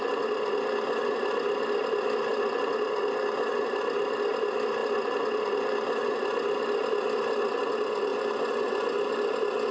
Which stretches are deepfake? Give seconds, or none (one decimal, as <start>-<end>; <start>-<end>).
none